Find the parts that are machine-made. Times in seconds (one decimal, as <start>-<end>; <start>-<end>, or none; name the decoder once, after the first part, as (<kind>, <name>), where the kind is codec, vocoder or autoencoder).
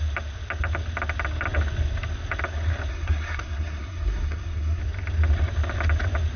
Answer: 2.9-4.8 (codec, SNAC)